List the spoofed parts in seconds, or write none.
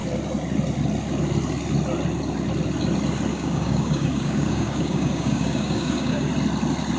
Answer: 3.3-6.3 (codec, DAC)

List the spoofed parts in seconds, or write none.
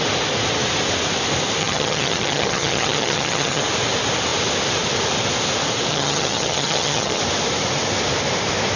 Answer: 1.6-3.6 (vocoder, HiFi-GAN); 5.9-7.2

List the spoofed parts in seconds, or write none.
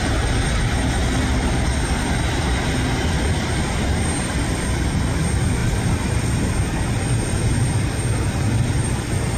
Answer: 5.6-6.2 (vocoder, BigVGAN v2)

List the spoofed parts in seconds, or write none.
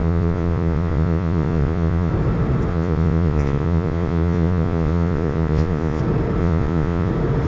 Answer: 0.0-2.1 (vocoder, Vocos); 2.7-6.0; 6.4-7.1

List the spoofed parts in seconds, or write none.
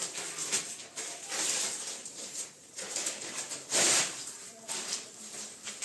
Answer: 2.0-5.8 (vocoder, BigVGAN v2)